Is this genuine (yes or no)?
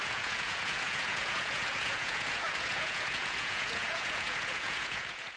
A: no